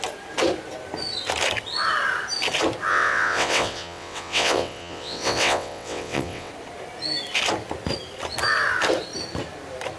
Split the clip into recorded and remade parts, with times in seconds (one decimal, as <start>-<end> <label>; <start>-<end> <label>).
0.0-2.9 recorded; 2.9-6.5 remade; 6.5-10.0 recorded